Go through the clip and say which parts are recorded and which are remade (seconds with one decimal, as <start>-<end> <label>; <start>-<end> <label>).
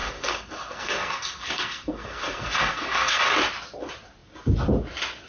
0.0-3.2 remade; 3.2-5.3 recorded